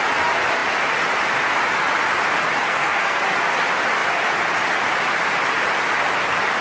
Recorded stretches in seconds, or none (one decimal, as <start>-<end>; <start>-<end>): 0.0-2.6; 3.2-6.6